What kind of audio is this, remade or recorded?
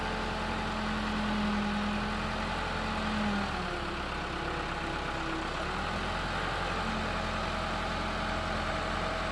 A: recorded